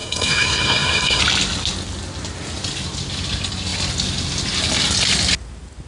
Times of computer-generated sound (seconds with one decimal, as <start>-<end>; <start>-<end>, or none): 0.0-1.2